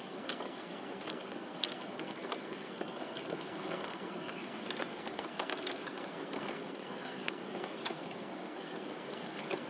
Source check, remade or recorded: remade